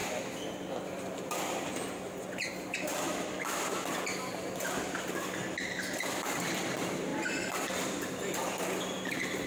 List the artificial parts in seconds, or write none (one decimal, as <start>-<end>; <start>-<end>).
none